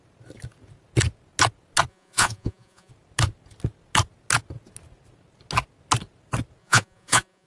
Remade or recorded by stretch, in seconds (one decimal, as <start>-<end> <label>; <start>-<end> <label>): 0.0-1.9 recorded; 1.9-2.9 remade; 2.9-6.6 recorded; 6.6-7.5 remade